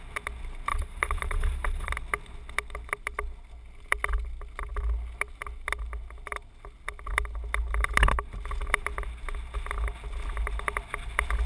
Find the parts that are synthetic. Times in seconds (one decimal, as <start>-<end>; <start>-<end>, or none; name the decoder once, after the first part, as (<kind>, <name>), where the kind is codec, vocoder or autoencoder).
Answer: 0.7-1.9 (vocoder, Vocos)